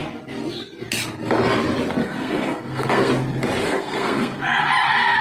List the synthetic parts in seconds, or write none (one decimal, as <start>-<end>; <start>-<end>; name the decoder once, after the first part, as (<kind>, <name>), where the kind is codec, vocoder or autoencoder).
2.0-3.1 (codec, SNAC); 3.6-4.6